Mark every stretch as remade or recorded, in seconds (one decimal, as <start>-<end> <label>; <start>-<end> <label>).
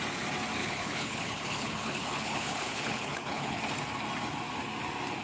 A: 0.0-0.6 recorded; 0.6-3.6 remade; 3.6-5.2 recorded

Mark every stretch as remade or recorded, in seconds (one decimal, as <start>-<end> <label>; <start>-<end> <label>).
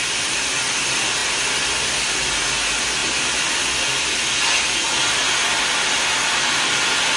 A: 0.0-7.2 recorded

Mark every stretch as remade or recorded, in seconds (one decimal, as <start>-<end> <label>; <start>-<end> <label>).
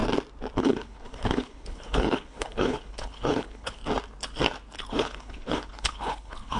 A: 0.0-0.6 recorded; 0.6-3.8 remade; 3.8-4.9 recorded; 4.9-6.6 remade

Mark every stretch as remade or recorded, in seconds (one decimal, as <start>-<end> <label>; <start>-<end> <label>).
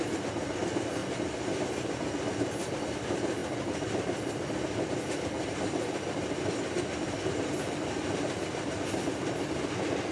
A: 0.0-10.1 recorded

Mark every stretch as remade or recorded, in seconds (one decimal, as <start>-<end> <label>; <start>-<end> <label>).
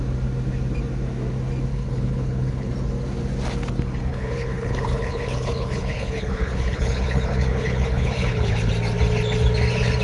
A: 0.0-1.7 recorded; 1.7-2.7 remade; 2.7-4.1 recorded; 4.1-8.7 remade; 8.7-10.0 recorded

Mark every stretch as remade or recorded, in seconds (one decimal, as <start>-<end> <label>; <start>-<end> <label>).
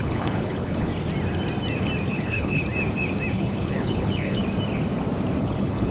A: 0.0-0.9 remade; 0.9-2.1 recorded; 2.1-2.6 remade; 2.6-3.3 recorded; 3.3-4.4 remade; 4.4-5.4 recorded; 5.4-5.9 remade